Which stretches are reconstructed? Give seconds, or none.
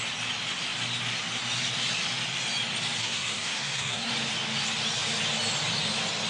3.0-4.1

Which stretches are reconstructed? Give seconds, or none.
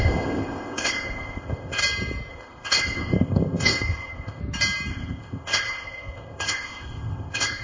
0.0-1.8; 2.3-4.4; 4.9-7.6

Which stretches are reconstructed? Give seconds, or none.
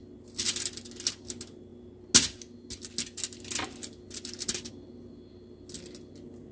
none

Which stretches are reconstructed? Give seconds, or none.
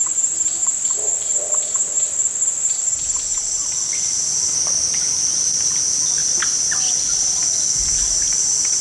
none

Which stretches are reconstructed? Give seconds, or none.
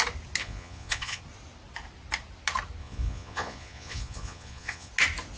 0.4-1.2; 2.8-4.9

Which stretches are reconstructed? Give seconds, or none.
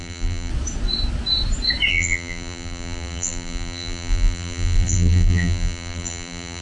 0.0-0.5; 1.9-6.6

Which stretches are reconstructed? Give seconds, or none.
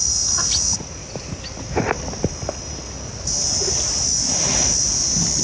none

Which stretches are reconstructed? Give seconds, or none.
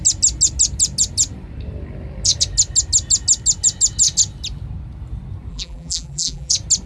5.5-6.5